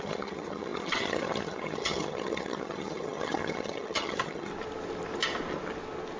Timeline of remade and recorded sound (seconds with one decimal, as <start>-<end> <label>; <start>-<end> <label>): 0.0-4.5 remade; 4.5-6.2 recorded